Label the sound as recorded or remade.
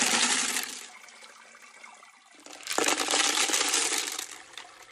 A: recorded